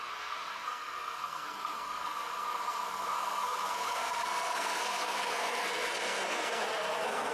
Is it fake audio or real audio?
fake